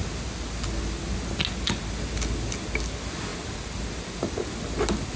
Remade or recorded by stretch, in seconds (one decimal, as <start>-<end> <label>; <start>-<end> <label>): 0.0-5.2 recorded